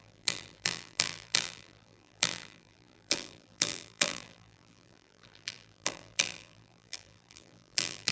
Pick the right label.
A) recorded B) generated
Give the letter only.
B